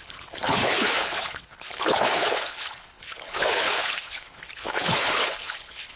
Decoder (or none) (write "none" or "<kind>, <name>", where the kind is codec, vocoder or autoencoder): codec, HILCodec